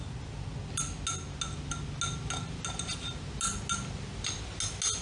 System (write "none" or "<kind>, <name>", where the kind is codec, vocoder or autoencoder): none